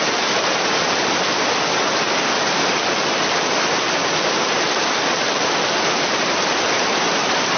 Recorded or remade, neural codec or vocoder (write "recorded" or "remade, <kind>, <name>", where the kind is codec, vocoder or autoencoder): recorded